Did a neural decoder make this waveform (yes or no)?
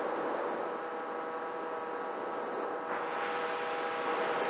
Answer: no